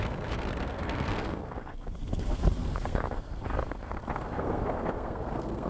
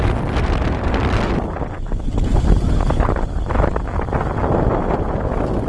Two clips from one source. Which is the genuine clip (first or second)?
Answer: second